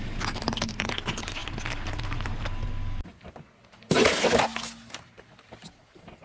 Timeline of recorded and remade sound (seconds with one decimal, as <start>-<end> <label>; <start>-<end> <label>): 0.0-6.2 recorded